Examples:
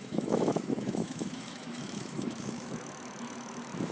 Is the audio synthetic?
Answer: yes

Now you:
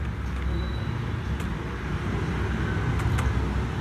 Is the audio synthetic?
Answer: no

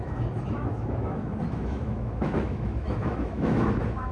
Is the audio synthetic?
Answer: yes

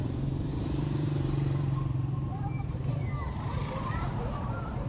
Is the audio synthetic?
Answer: yes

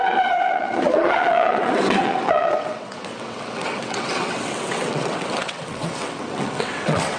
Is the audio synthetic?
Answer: yes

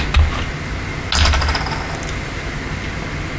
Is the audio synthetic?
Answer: no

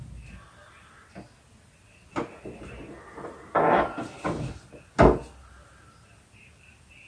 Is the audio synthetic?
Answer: no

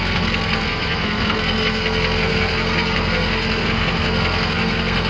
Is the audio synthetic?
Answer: yes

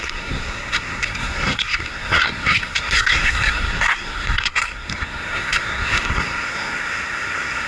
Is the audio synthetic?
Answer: yes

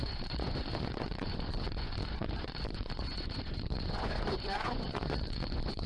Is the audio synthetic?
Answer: yes